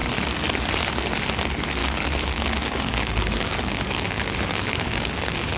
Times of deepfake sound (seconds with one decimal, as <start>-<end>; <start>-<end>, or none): 1.8-5.6